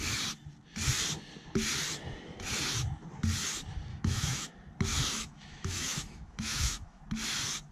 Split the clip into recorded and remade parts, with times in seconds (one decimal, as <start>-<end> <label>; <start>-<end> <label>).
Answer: 0.0-3.9 recorded; 3.9-4.5 remade; 4.5-4.9 recorded; 4.9-7.0 remade; 7.0-7.7 recorded